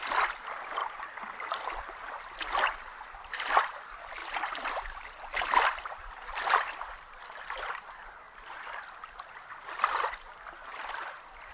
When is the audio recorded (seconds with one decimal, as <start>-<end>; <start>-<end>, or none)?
0.0-4.2; 8.1-10.7